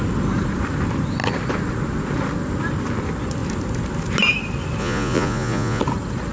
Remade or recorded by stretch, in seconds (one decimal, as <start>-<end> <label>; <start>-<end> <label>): 0.0-4.8 recorded; 4.8-5.8 remade; 5.8-6.3 recorded